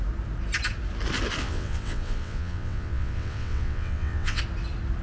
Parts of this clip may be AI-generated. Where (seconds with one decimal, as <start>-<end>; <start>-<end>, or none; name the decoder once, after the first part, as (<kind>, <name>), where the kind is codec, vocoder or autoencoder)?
1.4-4.4 (vocoder, WaveNeXt)